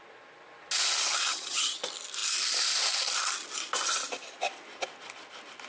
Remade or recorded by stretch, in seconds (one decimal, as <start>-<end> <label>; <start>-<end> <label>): 0.0-1.3 recorded; 1.3-1.8 remade; 1.8-5.7 recorded